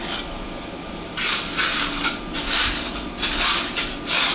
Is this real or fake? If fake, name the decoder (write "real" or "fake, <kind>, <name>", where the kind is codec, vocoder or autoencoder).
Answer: real